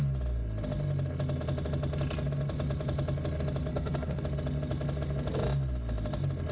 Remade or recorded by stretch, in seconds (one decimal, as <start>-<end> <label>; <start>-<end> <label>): 0.0-3.7 recorded; 3.7-4.2 remade; 4.2-6.5 recorded